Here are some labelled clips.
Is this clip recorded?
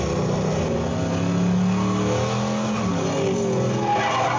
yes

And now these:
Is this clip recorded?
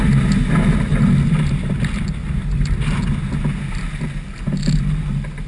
yes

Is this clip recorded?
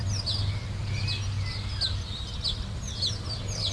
yes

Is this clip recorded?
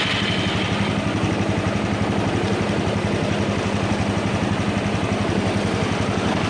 yes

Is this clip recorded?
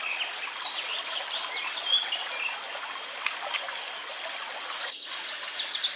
yes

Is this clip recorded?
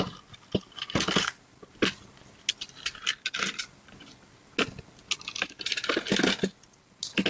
yes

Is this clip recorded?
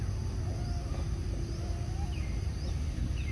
yes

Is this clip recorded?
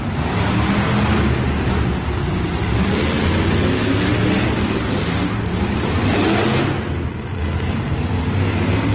yes